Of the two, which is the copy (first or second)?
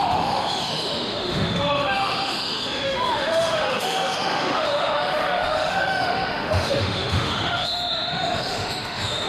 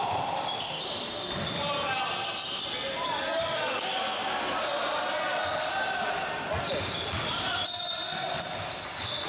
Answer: first